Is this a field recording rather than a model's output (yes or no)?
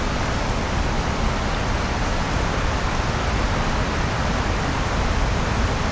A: yes